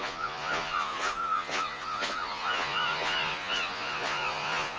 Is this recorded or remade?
remade